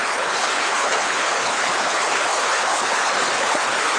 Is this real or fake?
fake